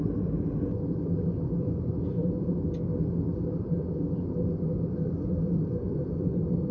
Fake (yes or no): no